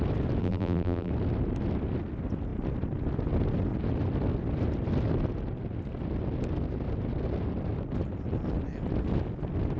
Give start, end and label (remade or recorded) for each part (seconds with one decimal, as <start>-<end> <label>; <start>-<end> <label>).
0.0-0.4 recorded; 0.4-1.1 remade; 1.1-9.8 recorded